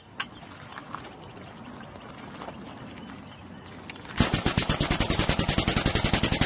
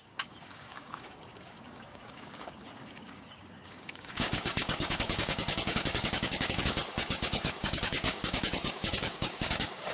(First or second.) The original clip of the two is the first